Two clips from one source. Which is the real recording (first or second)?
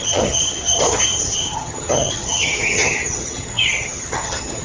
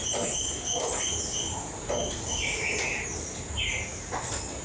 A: second